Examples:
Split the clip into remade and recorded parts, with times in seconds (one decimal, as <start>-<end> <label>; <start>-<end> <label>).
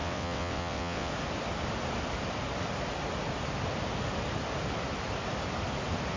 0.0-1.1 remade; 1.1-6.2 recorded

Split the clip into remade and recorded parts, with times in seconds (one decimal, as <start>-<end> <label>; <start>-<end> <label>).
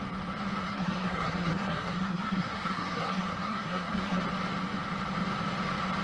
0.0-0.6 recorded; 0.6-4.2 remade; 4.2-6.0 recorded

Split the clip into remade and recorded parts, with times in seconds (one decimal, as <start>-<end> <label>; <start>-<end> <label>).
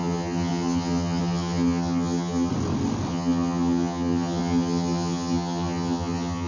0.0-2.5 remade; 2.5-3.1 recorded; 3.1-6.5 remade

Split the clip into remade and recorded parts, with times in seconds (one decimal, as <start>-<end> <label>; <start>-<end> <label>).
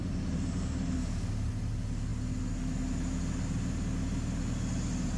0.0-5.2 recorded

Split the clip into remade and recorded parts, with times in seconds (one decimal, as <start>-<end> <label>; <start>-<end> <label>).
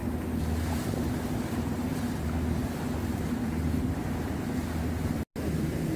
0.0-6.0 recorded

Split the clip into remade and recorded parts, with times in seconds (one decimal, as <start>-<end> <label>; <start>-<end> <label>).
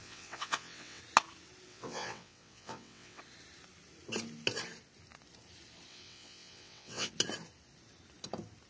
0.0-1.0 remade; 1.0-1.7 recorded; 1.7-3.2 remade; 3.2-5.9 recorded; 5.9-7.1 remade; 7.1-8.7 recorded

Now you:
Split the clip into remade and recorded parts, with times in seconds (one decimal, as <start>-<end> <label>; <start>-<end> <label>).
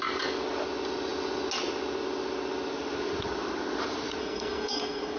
0.0-4.2 recorded; 4.2-5.2 remade